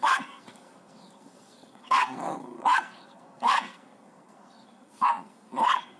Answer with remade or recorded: remade